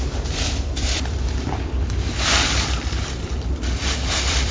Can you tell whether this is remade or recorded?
remade